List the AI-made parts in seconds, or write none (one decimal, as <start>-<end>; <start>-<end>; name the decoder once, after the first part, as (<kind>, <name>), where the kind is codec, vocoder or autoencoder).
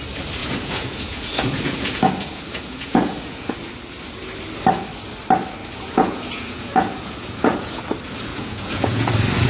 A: 0.4-3.7 (vocoder, Vocos); 5.6-7.8; 8.3-9.1